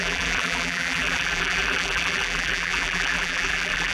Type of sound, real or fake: fake